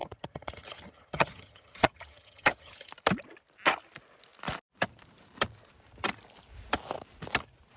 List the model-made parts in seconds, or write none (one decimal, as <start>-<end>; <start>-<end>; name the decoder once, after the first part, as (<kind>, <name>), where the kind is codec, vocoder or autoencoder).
0.0-2.9 (vocoder, HiFi-GAN)